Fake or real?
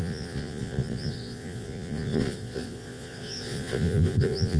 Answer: fake